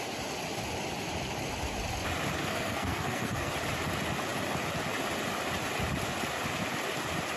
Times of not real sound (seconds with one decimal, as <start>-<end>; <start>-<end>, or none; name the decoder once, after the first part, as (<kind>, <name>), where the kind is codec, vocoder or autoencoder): 2.4-3.5 (codec, SNAC)